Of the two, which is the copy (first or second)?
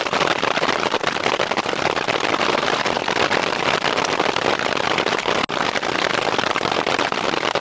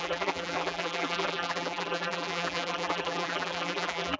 second